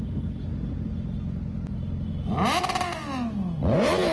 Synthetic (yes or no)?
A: no